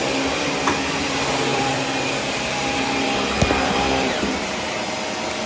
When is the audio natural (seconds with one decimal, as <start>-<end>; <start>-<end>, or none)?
0.0-1.5; 4.8-5.5